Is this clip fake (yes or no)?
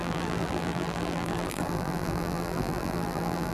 yes